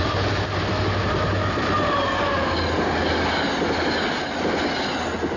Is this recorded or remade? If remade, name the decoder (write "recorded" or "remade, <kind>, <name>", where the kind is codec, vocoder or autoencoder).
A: recorded